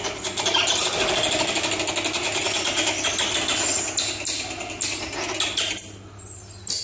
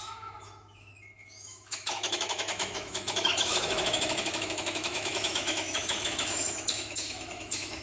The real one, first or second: first